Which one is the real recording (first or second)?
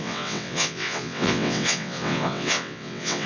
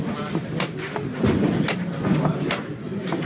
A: second